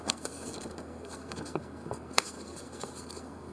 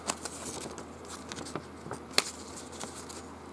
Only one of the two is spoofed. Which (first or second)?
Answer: first